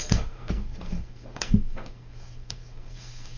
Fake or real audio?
fake